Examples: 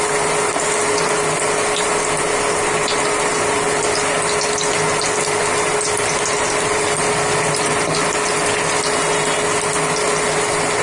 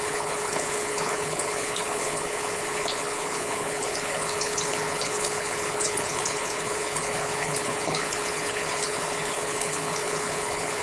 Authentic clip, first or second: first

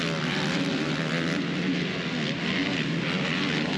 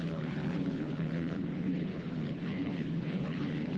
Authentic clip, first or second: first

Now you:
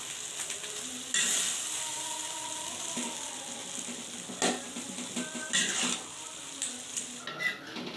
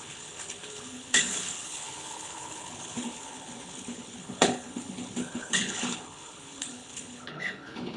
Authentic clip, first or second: first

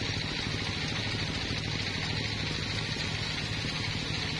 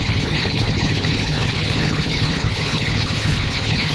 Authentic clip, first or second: first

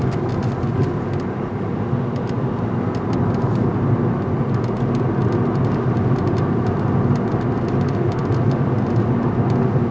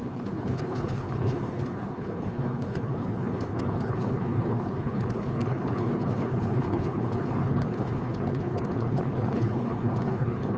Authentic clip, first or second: first